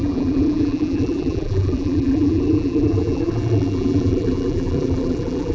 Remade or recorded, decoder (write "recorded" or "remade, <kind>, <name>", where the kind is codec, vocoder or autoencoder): remade, vocoder, BigVGAN v2